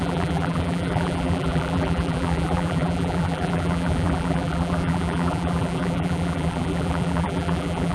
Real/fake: fake